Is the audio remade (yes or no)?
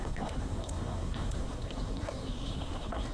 yes